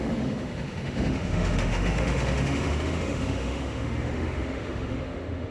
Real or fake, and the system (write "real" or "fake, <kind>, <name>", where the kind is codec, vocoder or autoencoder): fake, autoencoder, DAC-VAE